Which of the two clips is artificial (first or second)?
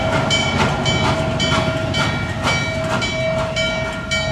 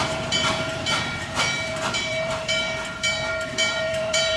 second